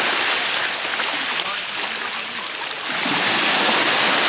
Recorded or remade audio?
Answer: recorded